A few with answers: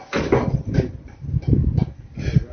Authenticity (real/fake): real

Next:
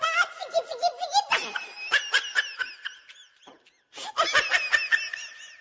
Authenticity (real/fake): real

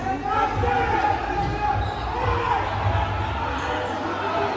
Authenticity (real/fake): real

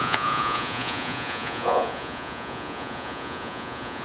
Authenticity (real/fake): fake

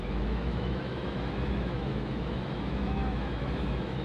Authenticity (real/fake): fake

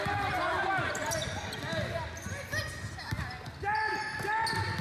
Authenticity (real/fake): real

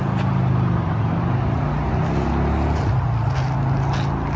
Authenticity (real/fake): real